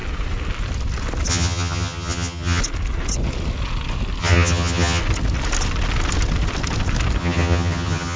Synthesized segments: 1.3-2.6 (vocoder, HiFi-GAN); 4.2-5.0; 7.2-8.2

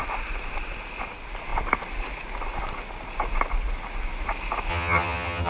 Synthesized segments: 4.7-5.5 (vocoder, HiFi-GAN)

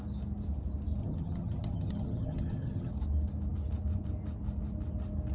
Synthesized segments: 1.0-2.9 (vocoder, HiFi-GAN)

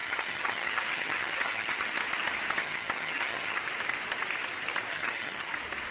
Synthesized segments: 0.0-1.9 (vocoder, HiFi-GAN); 2.6-3.6; 4.9-5.5

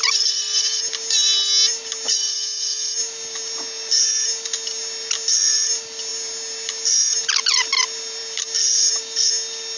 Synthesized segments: none

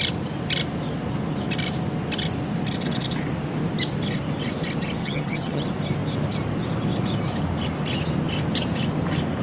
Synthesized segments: 5.0-5.6 (vocoder, HiFi-GAN)